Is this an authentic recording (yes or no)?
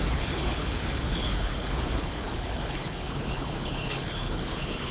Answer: no